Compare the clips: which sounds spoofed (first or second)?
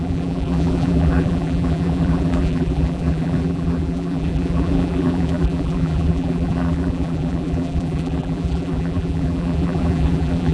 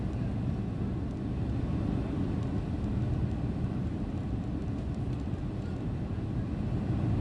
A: first